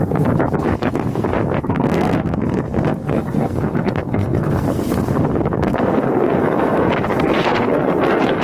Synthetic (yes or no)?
yes